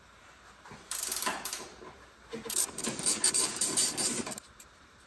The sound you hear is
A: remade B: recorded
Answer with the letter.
A